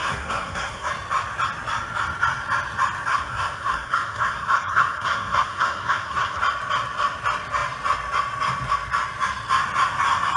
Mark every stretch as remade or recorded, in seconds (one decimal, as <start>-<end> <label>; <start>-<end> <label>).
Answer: 0.0-0.9 remade; 0.9-3.1 recorded; 3.1-6.4 remade; 6.4-10.4 recorded